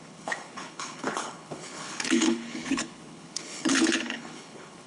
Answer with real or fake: fake